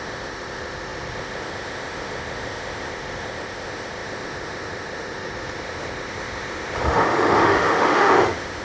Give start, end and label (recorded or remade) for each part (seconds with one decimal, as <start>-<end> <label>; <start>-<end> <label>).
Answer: 0.0-8.6 remade